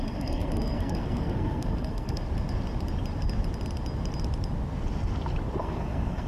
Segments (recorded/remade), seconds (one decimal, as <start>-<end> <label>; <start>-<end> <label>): 0.0-2.2 remade; 2.2-5.6 recorded; 5.6-6.3 remade